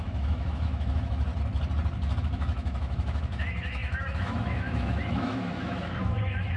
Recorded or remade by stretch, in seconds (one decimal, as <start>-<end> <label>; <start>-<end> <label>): 0.0-1.3 remade; 1.3-2.2 recorded; 2.2-6.6 remade